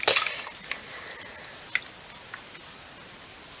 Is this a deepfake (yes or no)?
no